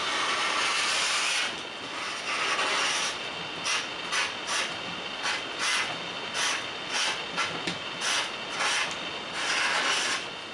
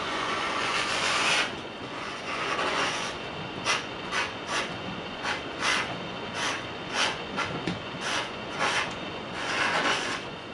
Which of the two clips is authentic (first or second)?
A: first